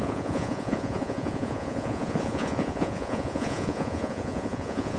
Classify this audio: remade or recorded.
remade